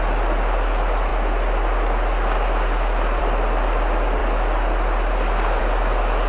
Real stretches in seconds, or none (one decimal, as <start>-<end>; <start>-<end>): 0.0-6.3